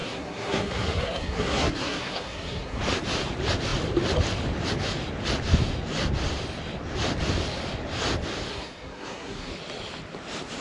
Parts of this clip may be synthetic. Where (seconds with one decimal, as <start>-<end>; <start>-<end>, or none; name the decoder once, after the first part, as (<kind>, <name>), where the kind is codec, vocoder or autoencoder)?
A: 0.0-2.8 (codec, SNAC); 8.5-9.5